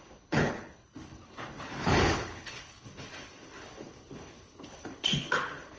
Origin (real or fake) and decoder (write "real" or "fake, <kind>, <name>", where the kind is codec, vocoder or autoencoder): fake, codec, HILCodec